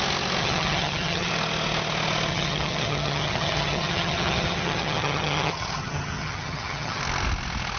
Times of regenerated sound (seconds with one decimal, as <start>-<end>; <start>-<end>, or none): 0.4-1.3; 2.3-7.0